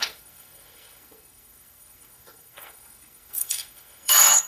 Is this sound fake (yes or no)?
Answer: yes